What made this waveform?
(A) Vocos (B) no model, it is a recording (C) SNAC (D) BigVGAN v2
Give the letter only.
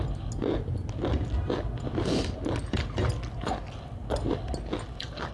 B